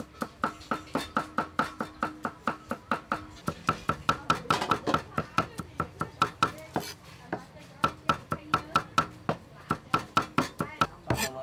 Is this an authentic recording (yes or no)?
yes